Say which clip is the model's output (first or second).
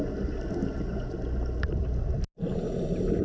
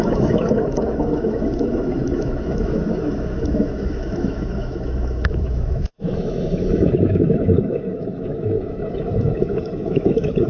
second